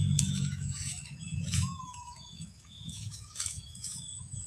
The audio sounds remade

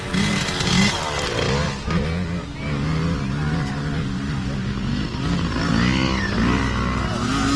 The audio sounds recorded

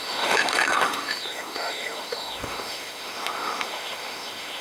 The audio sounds remade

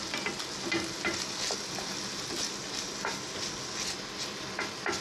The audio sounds recorded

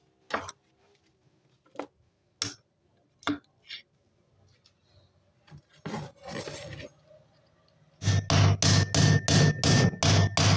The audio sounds recorded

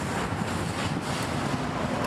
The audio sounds recorded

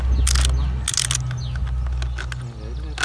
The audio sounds recorded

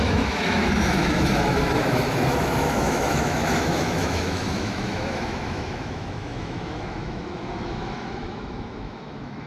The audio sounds remade